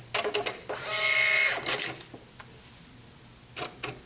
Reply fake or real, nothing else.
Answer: real